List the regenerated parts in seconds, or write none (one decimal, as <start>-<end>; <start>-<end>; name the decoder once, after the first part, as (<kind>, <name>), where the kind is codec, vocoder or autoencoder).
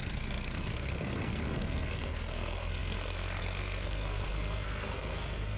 0.0-5.6 (codec, SNAC)